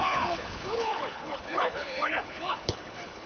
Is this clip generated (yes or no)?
yes